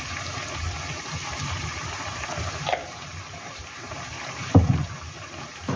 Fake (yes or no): yes